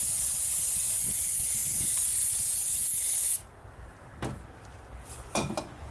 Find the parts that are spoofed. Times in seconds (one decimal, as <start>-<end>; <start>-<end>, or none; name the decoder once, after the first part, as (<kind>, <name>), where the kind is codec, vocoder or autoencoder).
0.0-1.6 (vocoder, Vocos); 5.1-5.9